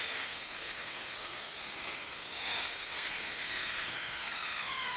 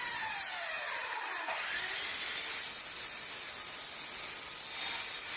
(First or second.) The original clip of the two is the second